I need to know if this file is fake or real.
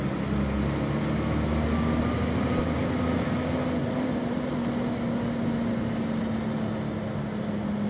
real